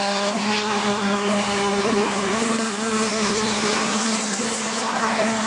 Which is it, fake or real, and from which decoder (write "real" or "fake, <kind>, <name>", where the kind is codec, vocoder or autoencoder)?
fake, codec, SNAC